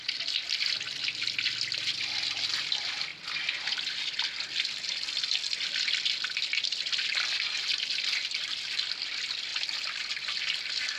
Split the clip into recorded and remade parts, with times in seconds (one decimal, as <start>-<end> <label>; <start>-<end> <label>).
0.0-11.0 recorded